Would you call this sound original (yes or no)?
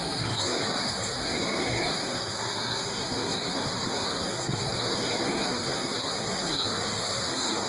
no